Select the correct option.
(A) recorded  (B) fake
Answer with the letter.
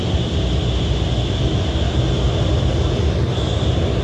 A